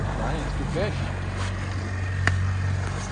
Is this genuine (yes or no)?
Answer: yes